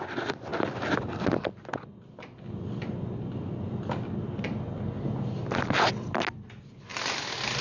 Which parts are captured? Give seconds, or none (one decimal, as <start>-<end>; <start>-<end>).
0.0-7.6